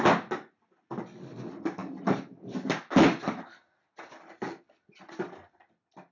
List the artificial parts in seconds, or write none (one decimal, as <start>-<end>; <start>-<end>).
none